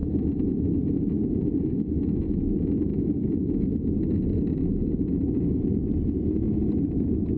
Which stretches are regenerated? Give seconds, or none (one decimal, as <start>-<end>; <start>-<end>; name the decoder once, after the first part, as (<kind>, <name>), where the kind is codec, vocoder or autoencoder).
none